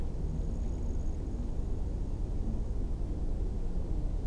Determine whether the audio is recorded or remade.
recorded